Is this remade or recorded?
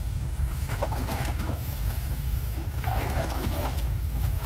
remade